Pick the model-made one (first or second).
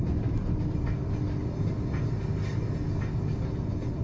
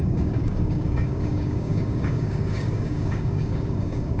second